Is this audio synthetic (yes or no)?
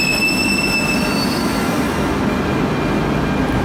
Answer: no